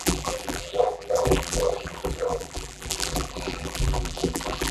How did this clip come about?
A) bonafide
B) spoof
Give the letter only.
B